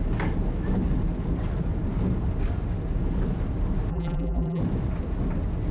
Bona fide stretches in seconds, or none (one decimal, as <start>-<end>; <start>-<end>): 0.0-3.9; 4.6-5.7